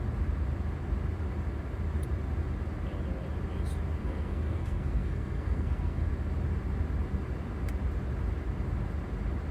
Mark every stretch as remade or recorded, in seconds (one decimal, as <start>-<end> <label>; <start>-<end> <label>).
0.0-4.0 recorded; 4.0-6.1 remade; 6.1-9.5 recorded